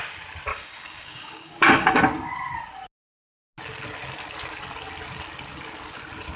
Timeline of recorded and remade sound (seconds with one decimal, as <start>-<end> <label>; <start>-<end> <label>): 0.0-0.5 recorded; 0.5-2.0 remade; 2.0-6.4 recorded